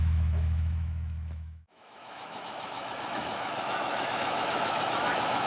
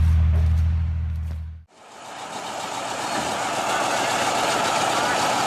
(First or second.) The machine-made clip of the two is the first